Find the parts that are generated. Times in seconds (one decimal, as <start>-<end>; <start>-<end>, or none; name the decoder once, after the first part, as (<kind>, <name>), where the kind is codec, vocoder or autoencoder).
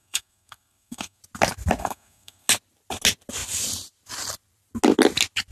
0.0-1.2 (codec, SNAC); 1.8-2.5